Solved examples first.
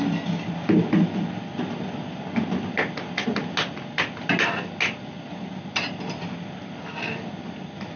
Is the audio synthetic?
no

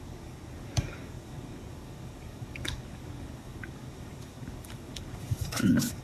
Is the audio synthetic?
yes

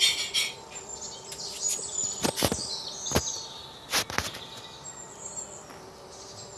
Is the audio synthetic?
no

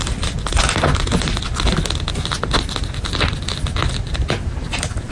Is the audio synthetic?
no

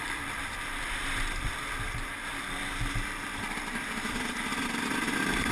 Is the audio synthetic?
yes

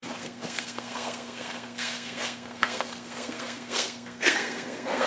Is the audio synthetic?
yes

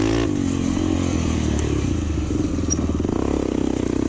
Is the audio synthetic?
no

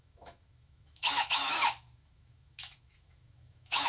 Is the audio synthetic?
yes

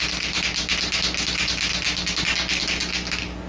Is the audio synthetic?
no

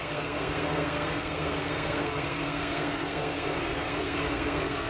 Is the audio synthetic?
yes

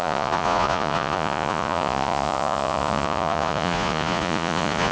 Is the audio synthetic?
yes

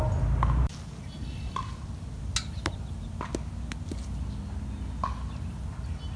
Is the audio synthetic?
no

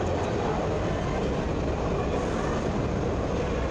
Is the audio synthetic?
no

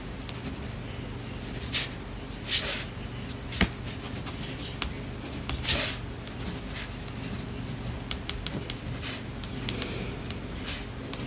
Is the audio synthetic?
no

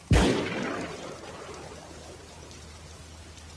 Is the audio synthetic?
no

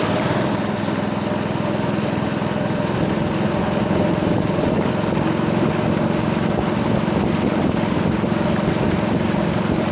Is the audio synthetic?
no